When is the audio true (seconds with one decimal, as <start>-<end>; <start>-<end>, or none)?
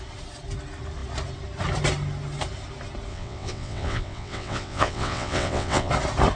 0.0-3.1; 5.9-6.4